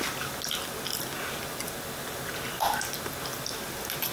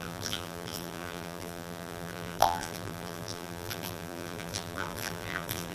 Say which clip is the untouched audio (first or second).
first